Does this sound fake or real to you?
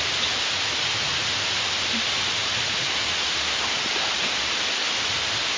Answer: real